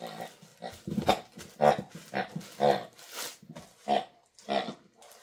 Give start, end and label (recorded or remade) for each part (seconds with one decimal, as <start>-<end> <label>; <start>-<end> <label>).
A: 0.0-5.2 recorded